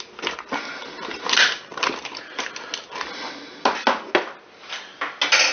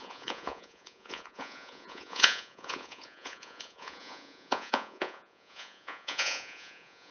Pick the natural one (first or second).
first